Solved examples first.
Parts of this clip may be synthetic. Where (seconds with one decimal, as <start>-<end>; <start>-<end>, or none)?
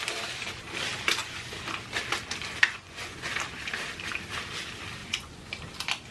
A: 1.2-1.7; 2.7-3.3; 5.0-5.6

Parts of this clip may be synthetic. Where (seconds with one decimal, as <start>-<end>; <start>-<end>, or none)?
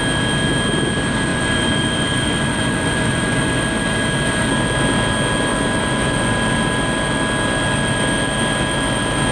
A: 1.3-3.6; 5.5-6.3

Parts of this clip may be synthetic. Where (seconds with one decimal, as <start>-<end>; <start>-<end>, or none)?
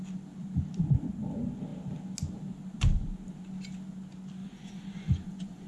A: 4.4-5.7